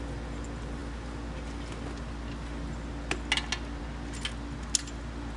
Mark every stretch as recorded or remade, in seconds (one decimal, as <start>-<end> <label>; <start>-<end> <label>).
0.0-5.4 recorded